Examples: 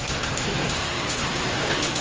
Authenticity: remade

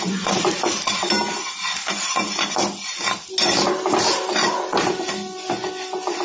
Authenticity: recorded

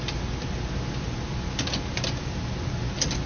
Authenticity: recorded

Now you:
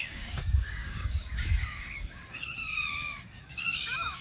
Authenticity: remade